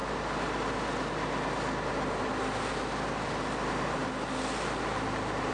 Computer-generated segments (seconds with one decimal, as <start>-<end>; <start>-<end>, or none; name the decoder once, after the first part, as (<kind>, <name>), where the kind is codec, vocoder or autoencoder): none